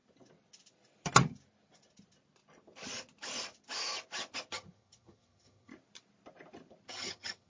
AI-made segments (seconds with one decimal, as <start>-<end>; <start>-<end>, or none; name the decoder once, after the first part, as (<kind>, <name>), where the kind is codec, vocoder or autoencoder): 4.5-5.7 (vocoder, HiFi-GAN); 6.9-7.5